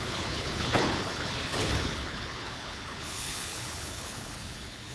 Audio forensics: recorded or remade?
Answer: remade